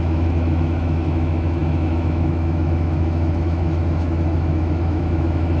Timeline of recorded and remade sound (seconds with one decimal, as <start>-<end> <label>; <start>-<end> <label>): 0.0-5.6 remade